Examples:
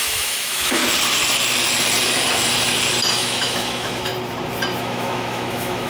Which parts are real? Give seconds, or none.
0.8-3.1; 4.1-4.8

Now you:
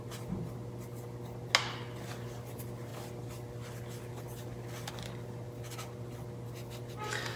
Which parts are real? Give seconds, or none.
0.0-7.4

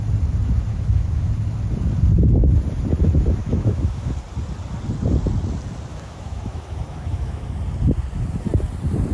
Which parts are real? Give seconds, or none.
0.0-0.7; 1.3-3.4; 4.1-5.9; 7.5-9.1

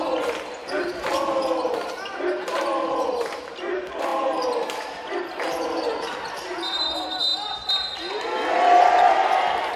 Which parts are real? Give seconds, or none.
0.0-9.8

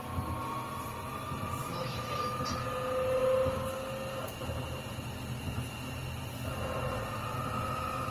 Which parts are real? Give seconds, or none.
0.0-1.6; 2.1-8.1

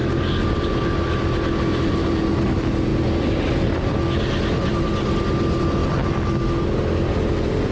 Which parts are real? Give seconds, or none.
0.0-7.7

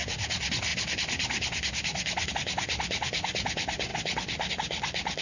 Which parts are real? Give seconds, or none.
0.0-5.2

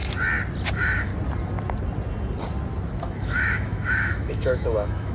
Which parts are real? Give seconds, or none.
0.0-0.7; 1.1-3.0